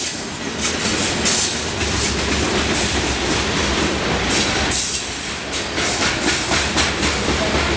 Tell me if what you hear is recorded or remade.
recorded